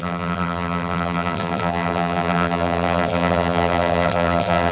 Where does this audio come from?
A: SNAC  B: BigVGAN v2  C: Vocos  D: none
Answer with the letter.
B